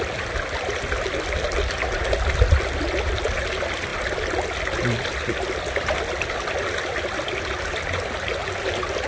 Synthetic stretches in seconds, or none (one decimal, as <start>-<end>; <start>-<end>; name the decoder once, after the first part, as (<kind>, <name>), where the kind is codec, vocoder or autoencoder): none